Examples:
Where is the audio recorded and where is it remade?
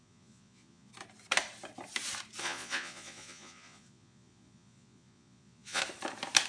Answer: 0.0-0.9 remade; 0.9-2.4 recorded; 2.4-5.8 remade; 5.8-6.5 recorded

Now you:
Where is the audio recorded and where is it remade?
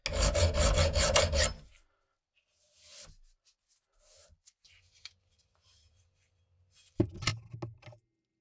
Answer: 0.0-8.4 recorded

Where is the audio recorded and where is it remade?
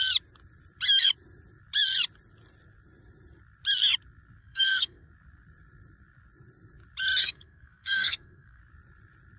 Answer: 0.0-4.4 recorded; 4.4-5.1 remade; 5.1-7.2 recorded; 7.2-8.6 remade; 8.6-9.4 recorded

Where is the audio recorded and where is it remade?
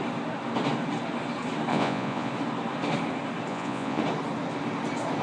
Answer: 0.0-1.7 recorded; 1.7-2.3 remade; 2.3-3.5 recorded; 3.5-4.0 remade; 4.0-5.2 recorded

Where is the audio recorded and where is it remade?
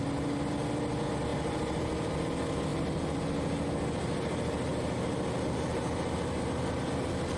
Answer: 0.0-7.4 recorded